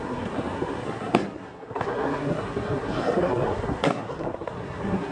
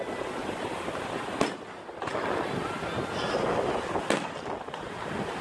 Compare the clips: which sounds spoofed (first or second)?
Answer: first